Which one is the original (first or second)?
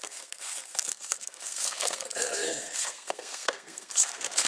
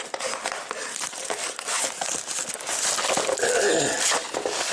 second